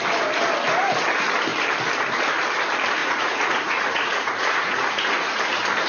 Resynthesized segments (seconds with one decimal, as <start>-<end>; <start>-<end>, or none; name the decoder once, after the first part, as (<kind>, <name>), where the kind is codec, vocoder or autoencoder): 3.0-5.4 (vocoder, Vocos)